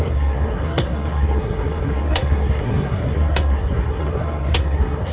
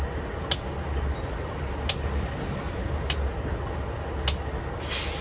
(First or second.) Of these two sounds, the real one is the second